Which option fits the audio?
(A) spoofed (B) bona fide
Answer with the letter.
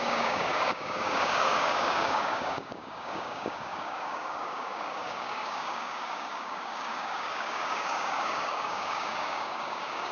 A